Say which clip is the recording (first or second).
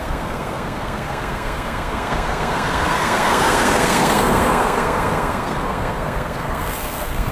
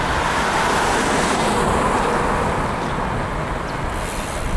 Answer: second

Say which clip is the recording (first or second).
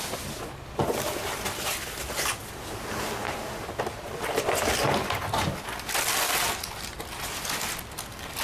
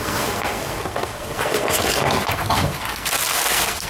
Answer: first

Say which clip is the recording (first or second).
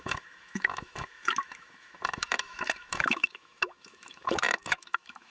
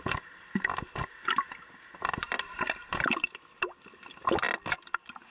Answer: second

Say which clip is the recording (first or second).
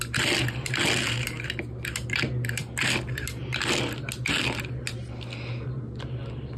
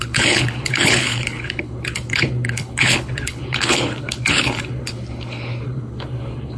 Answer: first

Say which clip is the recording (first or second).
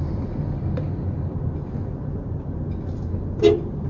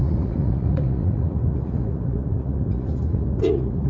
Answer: first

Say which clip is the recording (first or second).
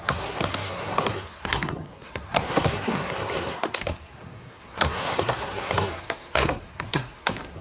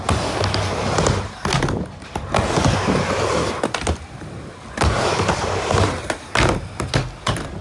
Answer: second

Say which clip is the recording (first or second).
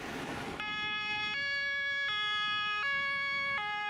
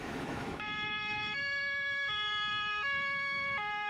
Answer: first